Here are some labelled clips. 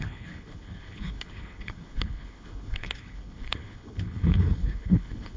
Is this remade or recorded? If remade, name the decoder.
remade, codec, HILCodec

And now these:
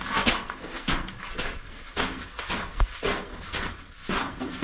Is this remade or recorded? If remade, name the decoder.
remade, codec, SNAC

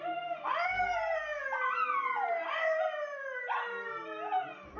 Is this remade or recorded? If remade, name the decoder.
recorded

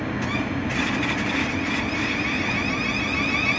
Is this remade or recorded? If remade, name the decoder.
recorded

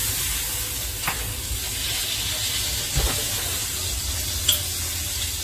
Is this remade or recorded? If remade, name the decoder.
recorded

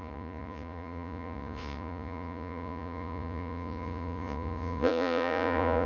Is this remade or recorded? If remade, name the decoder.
remade, vocoder, Vocos